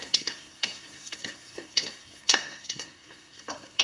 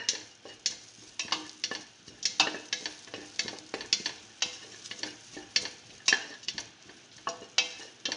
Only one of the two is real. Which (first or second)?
second